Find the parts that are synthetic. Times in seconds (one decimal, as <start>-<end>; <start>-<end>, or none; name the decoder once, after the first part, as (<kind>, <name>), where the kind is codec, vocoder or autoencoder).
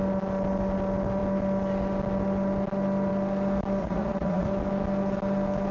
3.8-4.5 (vocoder, Vocos)